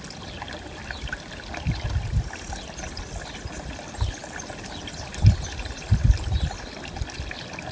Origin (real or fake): real